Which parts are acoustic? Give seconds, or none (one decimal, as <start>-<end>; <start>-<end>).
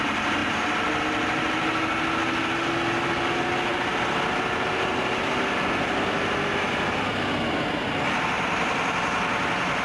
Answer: 0.0-9.8